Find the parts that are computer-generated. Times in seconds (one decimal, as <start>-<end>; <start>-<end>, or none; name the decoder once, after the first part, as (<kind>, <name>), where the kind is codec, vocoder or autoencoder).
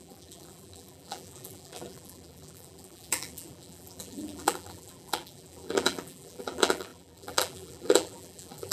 0.0-8.7 (vocoder, BigVGAN v2)